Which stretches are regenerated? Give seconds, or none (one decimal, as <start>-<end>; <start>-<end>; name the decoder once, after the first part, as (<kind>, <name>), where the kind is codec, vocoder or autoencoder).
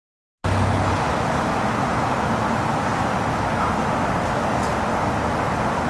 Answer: none